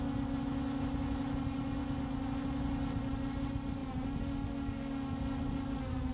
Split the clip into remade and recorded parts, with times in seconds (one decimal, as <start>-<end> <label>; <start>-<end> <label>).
0.0-6.1 recorded